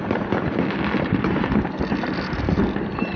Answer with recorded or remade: remade